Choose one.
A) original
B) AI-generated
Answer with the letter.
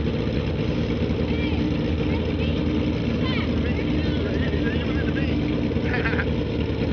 A